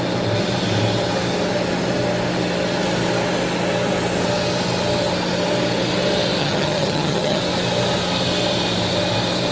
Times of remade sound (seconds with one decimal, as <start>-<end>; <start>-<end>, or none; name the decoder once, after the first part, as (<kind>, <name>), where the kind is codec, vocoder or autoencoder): 6.4-7.4 (vocoder, HiFi-GAN)